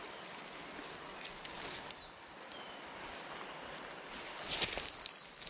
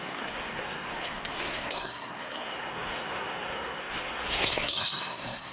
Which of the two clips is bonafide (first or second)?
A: first